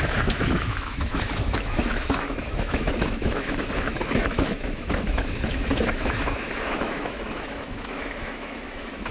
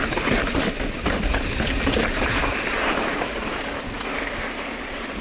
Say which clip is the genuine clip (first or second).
second